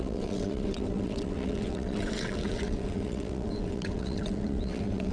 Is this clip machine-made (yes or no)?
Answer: yes